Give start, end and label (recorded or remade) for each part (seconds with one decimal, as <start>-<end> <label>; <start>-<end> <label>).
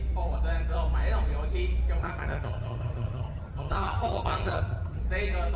0.0-2.0 recorded; 2.0-5.0 remade; 5.0-5.6 recorded